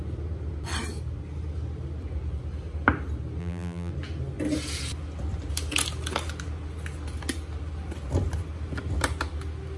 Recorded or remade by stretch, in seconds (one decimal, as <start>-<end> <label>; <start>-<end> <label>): 0.0-3.4 recorded; 3.4-3.9 remade; 3.9-9.8 recorded